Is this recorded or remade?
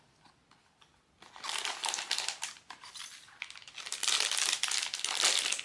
recorded